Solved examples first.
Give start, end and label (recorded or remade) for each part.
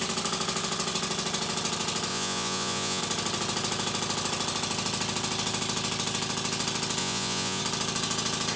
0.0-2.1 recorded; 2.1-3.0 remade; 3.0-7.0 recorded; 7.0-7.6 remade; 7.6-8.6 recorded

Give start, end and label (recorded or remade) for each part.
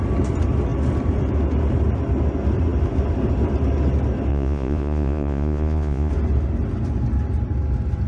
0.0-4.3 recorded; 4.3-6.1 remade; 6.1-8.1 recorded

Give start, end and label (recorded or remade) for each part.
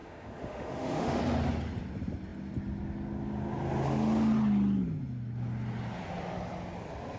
0.0-1.2 remade; 1.2-7.2 recorded